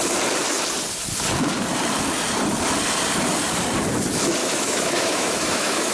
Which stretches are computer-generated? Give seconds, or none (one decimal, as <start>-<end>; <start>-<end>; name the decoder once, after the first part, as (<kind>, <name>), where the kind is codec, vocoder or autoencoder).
4.4-5.9 (autoencoder, DAC-VAE)